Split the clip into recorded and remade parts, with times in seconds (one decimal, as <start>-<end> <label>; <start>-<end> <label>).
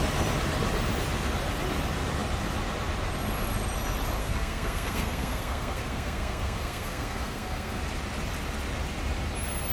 0.0-4.2 recorded; 4.2-7.8 remade; 7.8-9.7 recorded